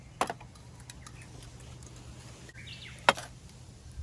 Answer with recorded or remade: recorded